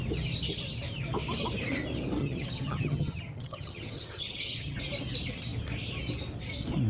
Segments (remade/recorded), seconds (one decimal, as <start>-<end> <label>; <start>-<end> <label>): 0.0-2.2 recorded; 2.2-4.8 remade; 4.8-6.9 recorded